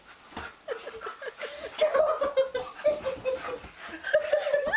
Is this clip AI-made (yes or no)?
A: no